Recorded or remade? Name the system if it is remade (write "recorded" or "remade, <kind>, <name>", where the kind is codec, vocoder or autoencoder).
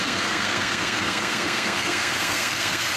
remade, codec, SNAC